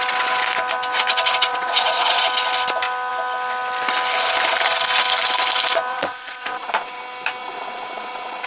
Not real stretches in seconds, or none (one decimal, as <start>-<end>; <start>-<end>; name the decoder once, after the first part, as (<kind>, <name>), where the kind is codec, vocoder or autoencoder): 1.5-2.2 (vocoder, Vocos); 5.9-7.0; 7.4-8.5